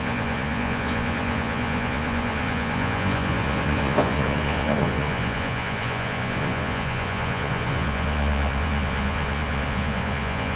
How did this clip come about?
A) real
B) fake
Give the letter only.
B